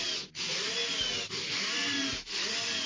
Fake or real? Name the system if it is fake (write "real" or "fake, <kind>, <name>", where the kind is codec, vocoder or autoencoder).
real